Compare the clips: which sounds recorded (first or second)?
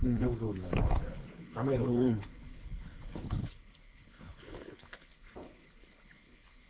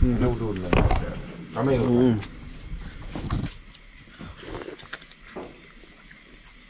second